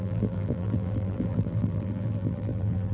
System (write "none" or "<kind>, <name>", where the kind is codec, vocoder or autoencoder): vocoder, BigVGAN v2